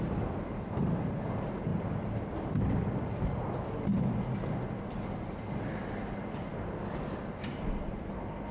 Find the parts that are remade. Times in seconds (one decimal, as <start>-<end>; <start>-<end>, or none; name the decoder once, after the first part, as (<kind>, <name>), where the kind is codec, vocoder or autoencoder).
none